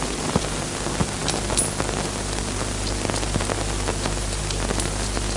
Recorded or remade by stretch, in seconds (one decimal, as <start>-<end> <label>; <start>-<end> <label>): 0.0-5.4 recorded